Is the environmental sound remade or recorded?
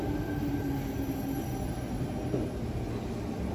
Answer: recorded